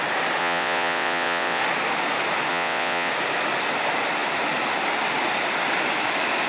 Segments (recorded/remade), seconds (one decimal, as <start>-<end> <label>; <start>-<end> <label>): 0.0-0.4 recorded; 0.4-1.6 remade; 1.6-2.5 recorded; 2.5-3.1 remade; 3.1-6.5 recorded